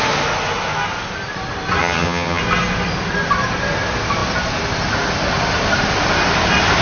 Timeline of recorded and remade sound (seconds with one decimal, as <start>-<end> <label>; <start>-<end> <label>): 0.0-1.8 recorded; 1.8-2.4 remade; 2.4-6.8 recorded